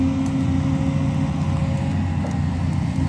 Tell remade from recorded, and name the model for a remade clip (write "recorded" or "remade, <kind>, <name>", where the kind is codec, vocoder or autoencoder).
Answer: recorded